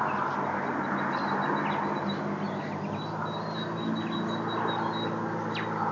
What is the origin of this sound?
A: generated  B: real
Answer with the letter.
B